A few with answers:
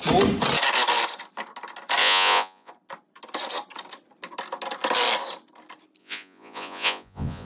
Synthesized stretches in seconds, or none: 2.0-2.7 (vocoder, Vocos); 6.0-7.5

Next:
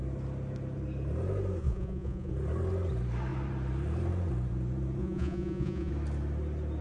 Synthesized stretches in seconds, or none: 1.6-2.3 (vocoder, Vocos); 5.0-5.9

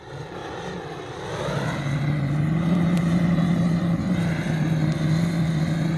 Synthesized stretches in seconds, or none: none

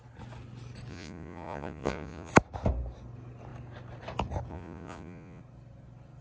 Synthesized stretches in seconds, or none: 0.9-2.3 (vocoder, Vocos); 4.5-5.4